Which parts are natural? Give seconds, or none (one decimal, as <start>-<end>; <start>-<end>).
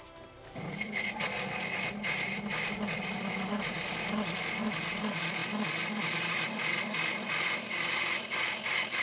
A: 0.0-9.0